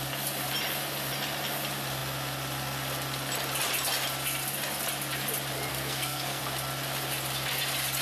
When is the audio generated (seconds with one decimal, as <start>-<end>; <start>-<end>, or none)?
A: 5.7-6.4